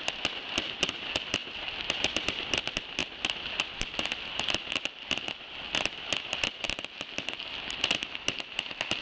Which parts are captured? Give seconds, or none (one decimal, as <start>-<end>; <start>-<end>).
0.0-9.0